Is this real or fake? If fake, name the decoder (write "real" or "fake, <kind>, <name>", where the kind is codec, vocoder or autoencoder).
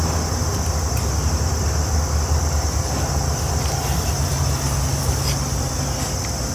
real